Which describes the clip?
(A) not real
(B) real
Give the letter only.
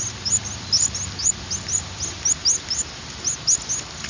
B